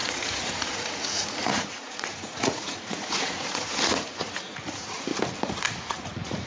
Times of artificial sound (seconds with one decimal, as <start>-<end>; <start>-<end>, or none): 0.0-5.1; 5.8-6.5